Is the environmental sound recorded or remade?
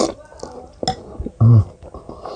recorded